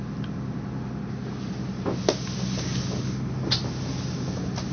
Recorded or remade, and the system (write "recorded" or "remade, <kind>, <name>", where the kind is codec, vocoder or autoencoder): recorded